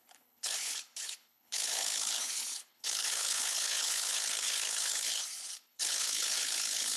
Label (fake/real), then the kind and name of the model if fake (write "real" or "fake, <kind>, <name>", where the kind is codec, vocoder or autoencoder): fake, codec, HILCodec